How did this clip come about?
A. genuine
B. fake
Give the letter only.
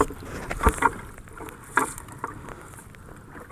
A